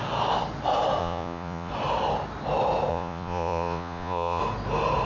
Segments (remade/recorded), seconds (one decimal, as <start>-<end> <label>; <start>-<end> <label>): 0.0-1.0 recorded; 1.0-1.7 remade; 1.7-2.9 recorded; 2.9-4.4 remade; 4.4-5.0 recorded

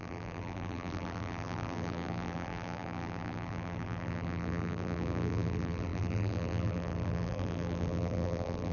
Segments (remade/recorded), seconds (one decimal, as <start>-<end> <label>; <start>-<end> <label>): 0.0-8.7 remade

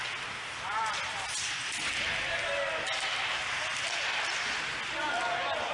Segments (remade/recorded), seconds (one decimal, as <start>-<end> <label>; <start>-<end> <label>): 0.0-5.7 recorded

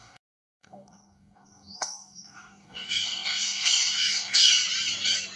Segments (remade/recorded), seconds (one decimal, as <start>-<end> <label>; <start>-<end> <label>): 0.0-4.5 remade; 4.5-5.4 recorded